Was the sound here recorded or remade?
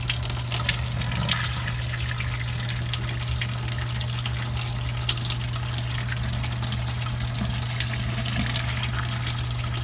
recorded